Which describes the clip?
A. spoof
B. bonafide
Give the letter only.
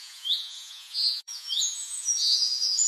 A